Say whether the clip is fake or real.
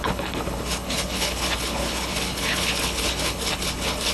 fake